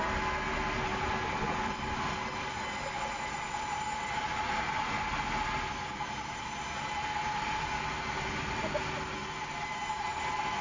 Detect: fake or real real